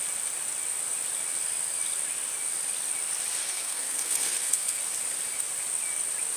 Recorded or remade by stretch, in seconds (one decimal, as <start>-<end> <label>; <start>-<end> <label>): 0.0-3.4 recorded; 3.4-4.8 remade; 4.8-6.4 recorded